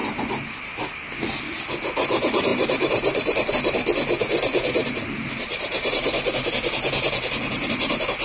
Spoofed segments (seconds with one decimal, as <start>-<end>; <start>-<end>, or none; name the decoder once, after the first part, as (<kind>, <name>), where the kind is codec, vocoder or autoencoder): 2.5-3.5 (vocoder, BigVGAN v2); 4.8-6.5